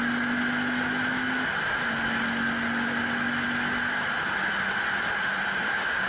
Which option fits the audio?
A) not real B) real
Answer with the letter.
B